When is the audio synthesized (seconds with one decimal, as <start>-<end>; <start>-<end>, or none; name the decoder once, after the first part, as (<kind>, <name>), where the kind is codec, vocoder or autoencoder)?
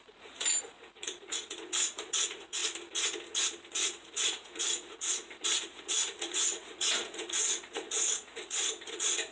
0.0-2.6 (vocoder, Vocos); 3.7-9.3